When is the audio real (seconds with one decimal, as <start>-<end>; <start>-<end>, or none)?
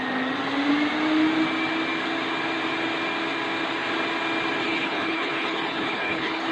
0.0-4.6